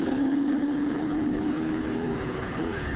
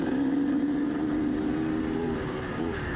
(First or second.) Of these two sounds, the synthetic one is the first